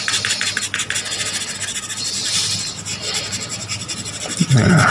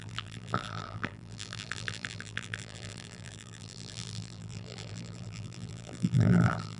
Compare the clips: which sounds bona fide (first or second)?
first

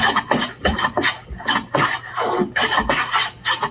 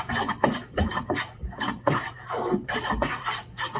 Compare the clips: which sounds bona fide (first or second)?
first